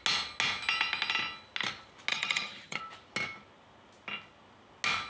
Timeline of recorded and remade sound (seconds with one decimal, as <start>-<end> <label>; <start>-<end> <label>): 0.0-2.1 recorded; 2.1-2.8 remade; 2.8-5.1 recorded